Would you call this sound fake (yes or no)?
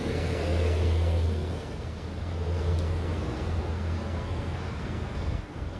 yes